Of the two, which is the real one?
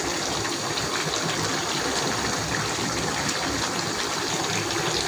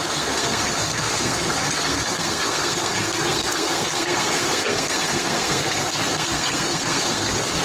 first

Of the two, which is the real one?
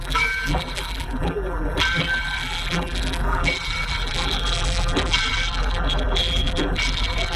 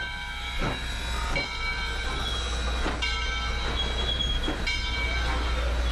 second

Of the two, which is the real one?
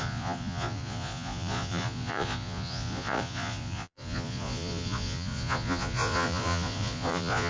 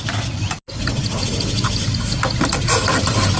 second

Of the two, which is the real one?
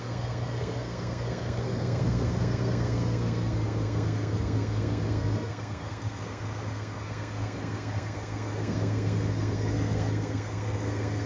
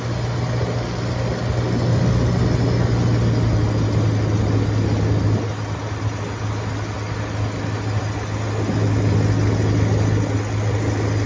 second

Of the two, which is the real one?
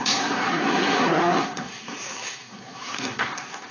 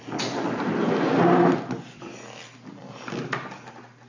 second